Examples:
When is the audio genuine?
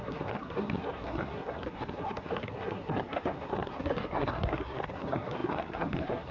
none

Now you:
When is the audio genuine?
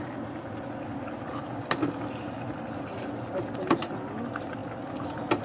0.0-5.4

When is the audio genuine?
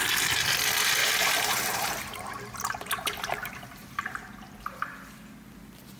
0.0-1.0; 4.6-6.0